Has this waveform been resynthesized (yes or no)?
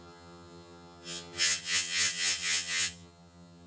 yes